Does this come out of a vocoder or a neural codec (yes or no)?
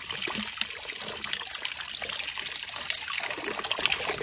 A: no